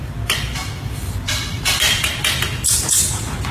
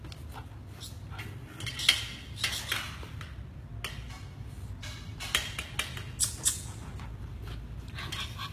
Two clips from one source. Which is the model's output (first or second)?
first